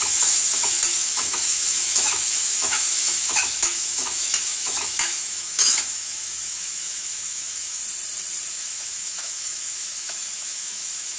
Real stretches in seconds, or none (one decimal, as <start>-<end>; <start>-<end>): 7.8-8.5